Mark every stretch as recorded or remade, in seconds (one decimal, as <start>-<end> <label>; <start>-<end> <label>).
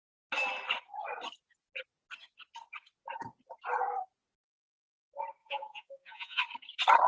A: 0.0-5.4 recorded; 5.4-6.4 remade; 6.4-7.1 recorded